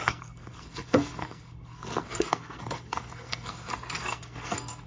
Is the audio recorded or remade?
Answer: remade